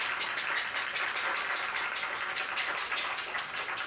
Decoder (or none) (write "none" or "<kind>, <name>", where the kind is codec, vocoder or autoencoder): none